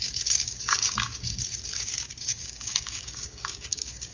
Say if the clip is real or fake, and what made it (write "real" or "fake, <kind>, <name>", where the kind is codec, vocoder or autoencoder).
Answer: fake, codec, DAC